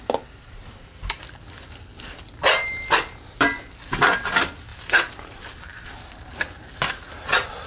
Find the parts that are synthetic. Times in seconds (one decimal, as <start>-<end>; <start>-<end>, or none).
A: 4.7-6.1